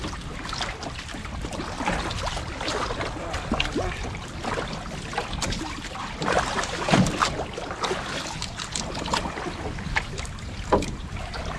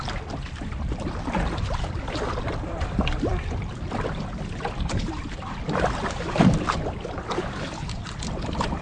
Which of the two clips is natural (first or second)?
first